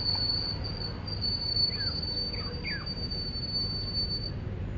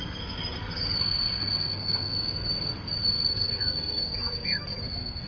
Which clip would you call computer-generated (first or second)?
second